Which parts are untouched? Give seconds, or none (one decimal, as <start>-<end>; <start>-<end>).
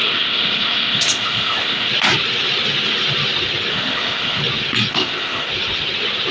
1.9-3.7; 4.4-4.9; 5.5-6.3